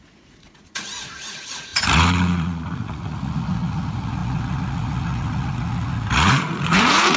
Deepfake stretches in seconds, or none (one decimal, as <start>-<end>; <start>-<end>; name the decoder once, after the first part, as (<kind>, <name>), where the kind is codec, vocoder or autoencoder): 0.0-7.2 (vocoder, Vocos)